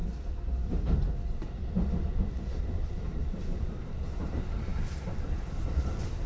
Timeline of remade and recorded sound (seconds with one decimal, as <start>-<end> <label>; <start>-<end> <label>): 0.0-2.0 recorded; 2.0-6.3 remade

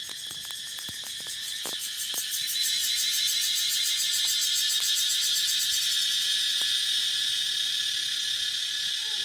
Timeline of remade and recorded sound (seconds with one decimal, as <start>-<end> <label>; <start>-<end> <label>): 0.0-9.2 recorded